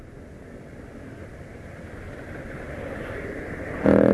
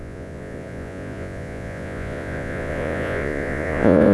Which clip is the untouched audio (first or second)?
first